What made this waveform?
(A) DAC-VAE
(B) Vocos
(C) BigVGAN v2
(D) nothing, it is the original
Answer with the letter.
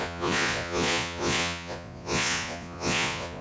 B